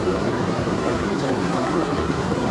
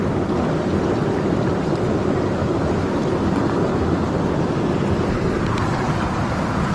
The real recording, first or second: second